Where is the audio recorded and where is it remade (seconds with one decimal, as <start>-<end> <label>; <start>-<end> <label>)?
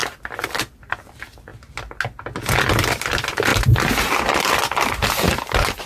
0.0-1.5 remade; 1.5-2.9 recorded; 2.9-5.9 remade